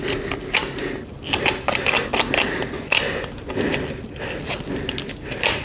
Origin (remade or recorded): recorded